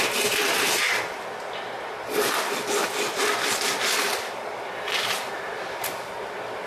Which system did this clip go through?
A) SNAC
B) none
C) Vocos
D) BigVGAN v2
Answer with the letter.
B